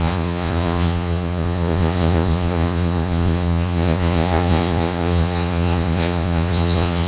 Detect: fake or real fake